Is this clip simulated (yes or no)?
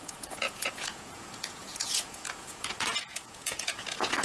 yes